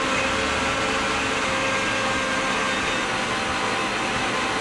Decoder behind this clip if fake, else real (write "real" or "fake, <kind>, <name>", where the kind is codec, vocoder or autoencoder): real